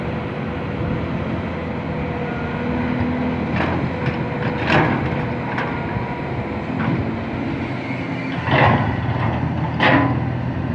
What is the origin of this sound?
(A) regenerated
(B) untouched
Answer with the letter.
B